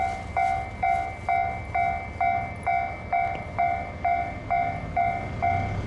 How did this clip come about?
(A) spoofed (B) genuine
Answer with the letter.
B